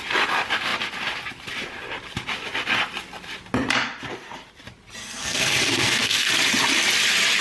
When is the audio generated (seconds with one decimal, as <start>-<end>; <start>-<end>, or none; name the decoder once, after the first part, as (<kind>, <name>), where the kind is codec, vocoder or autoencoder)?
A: 5.0-6.3 (codec, SNAC)